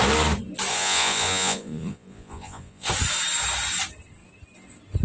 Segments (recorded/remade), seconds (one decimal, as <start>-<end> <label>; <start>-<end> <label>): 0.0-0.7 recorded; 0.7-2.9 remade; 2.9-5.0 recorded